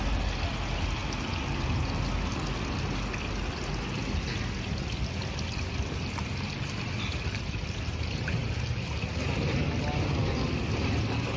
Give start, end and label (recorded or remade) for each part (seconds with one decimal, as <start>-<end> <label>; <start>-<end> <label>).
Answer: 0.0-11.4 recorded